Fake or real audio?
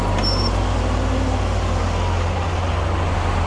real